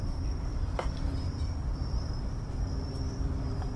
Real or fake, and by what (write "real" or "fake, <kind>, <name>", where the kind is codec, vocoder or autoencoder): fake, vocoder, BigVGAN v2